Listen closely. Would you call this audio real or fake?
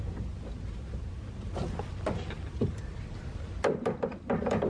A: real